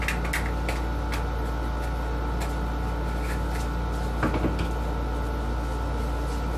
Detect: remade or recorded recorded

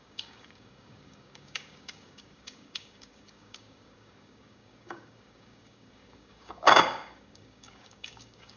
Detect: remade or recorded remade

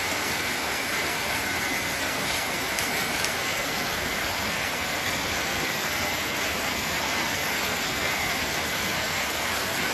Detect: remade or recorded remade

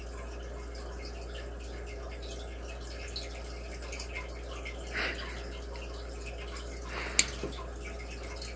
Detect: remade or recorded recorded